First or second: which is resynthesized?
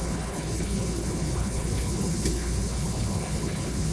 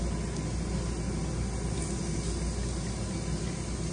first